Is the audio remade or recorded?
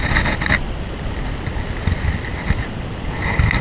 recorded